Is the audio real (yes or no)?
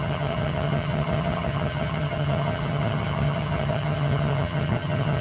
no